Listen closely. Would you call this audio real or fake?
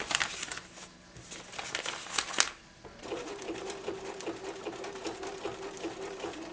real